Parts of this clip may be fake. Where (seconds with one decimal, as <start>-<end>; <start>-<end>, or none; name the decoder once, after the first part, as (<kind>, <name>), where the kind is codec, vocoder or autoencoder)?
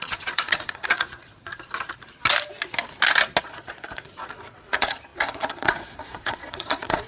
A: 0.0-1.5 (vocoder, Vocos); 3.4-7.1